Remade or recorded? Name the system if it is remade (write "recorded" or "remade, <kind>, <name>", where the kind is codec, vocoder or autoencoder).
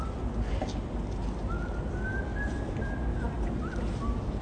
recorded